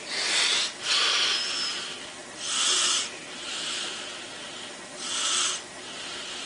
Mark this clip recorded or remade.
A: recorded